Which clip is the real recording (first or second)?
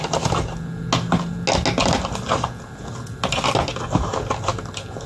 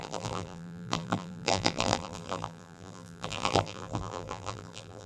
first